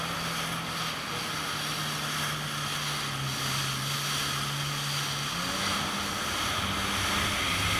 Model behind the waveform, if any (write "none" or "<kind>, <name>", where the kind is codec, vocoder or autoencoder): none